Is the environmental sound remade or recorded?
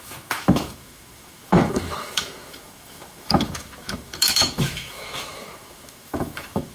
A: remade